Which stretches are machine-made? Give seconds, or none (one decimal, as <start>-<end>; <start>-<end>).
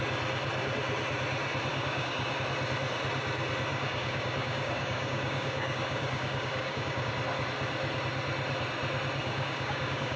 1.7-2.3; 3.7-7.1; 9.2-10.2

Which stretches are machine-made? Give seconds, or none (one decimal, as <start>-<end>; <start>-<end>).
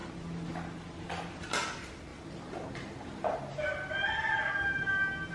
0.0-1.5; 2.1-4.5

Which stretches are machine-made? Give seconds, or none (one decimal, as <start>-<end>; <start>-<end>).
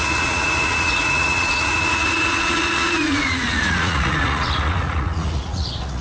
0.0-6.0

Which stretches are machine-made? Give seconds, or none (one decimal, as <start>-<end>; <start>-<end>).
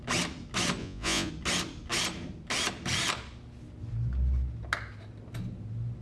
0.8-1.3